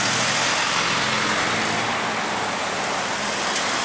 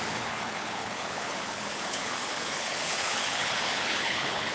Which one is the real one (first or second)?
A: first